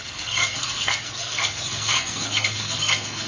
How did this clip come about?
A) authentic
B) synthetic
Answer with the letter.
B